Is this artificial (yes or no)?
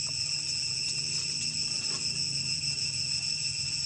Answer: no